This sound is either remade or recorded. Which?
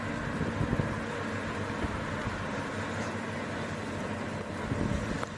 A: recorded